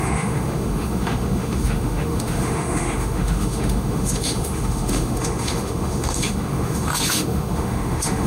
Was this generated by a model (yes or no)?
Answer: yes